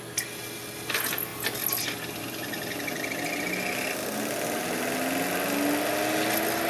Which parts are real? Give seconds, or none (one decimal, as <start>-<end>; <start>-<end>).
0.0-6.7